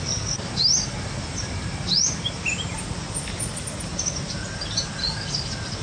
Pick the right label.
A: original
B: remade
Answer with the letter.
A